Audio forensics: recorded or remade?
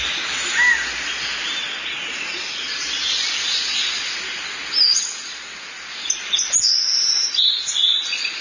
recorded